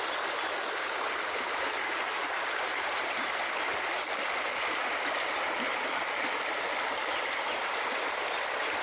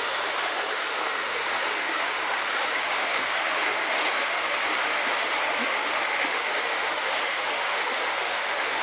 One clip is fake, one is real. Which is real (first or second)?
first